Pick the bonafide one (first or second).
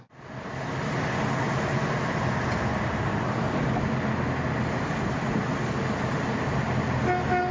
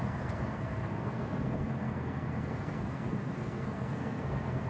first